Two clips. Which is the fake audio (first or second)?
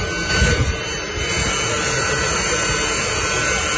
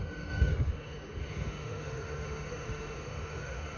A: second